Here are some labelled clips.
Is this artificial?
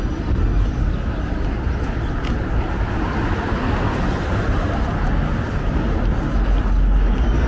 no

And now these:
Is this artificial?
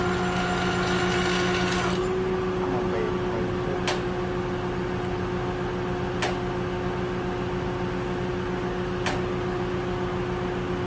no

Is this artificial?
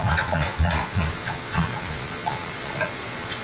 yes